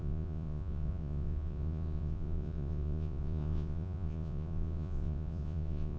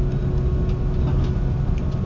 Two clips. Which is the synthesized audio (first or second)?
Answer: first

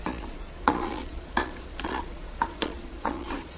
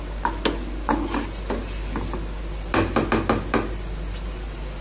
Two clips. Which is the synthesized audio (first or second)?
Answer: first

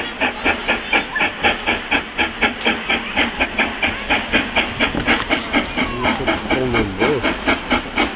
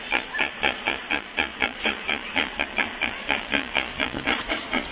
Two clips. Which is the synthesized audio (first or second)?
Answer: second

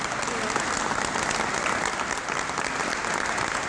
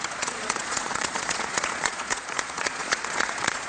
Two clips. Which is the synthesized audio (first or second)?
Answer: second